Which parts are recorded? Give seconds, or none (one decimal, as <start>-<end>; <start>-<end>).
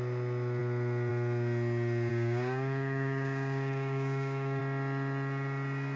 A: 0.0-2.1; 4.6-6.0